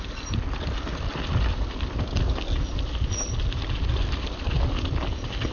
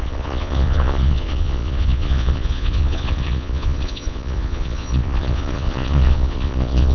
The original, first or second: first